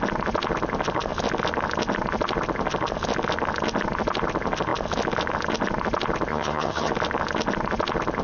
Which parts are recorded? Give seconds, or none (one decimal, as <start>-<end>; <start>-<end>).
0.0-6.3; 6.9-8.2